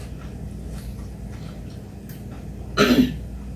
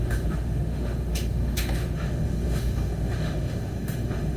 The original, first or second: first